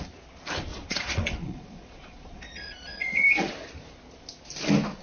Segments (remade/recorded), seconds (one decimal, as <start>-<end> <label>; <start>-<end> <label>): 0.0-0.7 recorded; 0.7-3.5 remade; 3.5-5.0 recorded

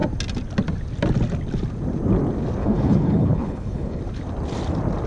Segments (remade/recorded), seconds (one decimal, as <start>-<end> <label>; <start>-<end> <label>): 0.0-2.6 recorded; 2.6-4.0 remade; 4.0-5.1 recorded

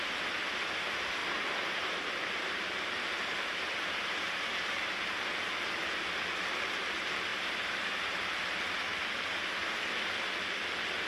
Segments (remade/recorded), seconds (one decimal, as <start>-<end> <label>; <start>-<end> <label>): 0.0-1.2 recorded; 1.2-4.9 remade; 4.9-7.3 recorded; 7.3-8.3 remade; 8.3-11.1 recorded

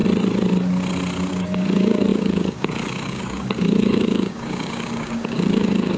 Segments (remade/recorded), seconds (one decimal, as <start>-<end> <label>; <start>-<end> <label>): 0.0-1.3 recorded; 1.3-6.0 remade

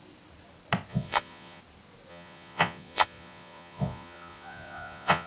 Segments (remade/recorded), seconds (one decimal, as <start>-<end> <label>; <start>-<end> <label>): 0.0-0.9 recorded; 0.9-1.6 remade; 1.6-2.1 recorded; 2.1-5.3 remade

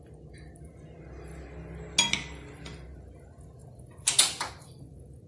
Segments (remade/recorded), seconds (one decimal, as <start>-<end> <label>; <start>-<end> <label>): 0.0-5.3 recorded